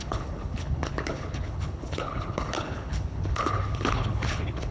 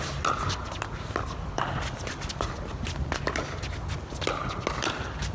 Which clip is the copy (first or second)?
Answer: first